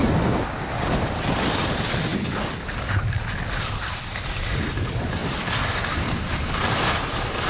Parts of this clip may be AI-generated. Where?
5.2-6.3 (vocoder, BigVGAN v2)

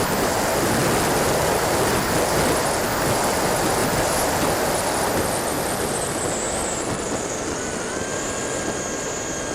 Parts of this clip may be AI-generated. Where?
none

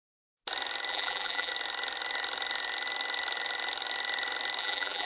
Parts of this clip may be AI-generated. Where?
0.9-1.5 (vocoder, BigVGAN v2); 4.6-5.1

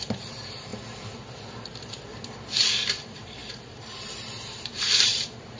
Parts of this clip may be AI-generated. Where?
0.0-0.7 (vocoder, BigVGAN v2); 2.9-5.6

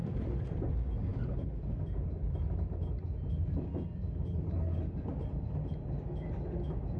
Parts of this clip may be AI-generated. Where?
0.0-0.7 (vocoder, BigVGAN v2)